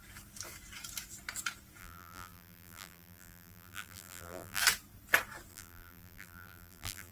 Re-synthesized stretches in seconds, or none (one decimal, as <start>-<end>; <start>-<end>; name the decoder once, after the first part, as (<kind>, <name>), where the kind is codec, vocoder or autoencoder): 1.8-4.6 (vocoder, BigVGAN v2); 5.5-7.1